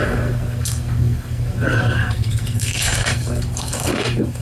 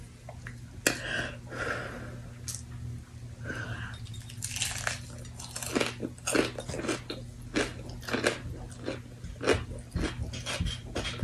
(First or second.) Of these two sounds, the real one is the second